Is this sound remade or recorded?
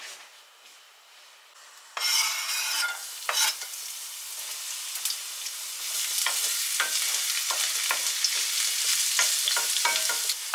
recorded